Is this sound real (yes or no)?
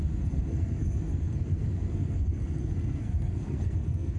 no